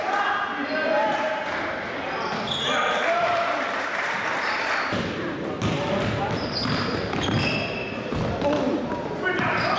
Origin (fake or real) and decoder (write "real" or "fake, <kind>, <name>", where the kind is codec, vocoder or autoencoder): real